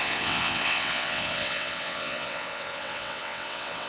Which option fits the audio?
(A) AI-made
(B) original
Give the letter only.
A